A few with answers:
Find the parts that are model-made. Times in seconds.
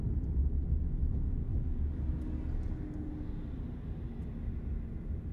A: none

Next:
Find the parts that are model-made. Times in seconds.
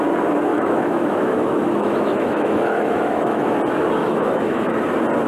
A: 0.5-3.5 (autoencoder, DAC-VAE); 4.0-4.8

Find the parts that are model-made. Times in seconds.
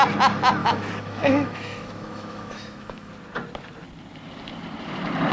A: 0.6-3.1 (autoencoder, DAC-VAE)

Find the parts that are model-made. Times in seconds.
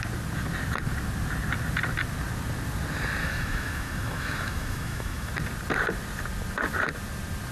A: 3.2-5.3 (autoencoder, DAC-VAE)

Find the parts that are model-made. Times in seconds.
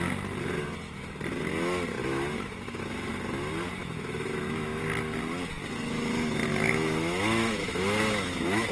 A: 2.0-3.1 (autoencoder, DAC-VAE); 3.8-4.8; 6.4-8.7